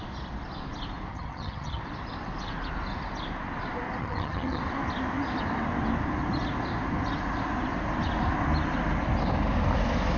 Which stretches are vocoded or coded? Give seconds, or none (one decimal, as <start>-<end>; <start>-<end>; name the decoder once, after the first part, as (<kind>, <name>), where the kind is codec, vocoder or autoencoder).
1.1-1.8 (vocoder, HiFi-GAN); 4.0-4.6